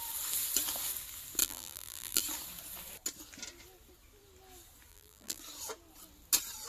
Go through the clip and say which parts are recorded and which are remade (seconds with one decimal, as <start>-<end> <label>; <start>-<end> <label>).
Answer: 0.0-1.4 recorded; 1.4-2.2 remade; 2.2-4.9 recorded; 4.9-5.4 remade; 5.4-6.7 recorded